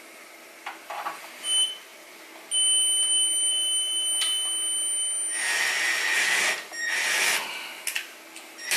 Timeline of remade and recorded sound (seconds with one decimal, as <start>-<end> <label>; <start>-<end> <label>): 0.0-8.8 recorded